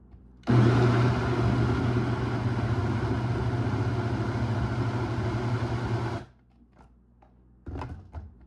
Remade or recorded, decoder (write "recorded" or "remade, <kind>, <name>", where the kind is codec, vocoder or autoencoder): recorded